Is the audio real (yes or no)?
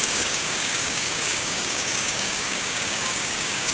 no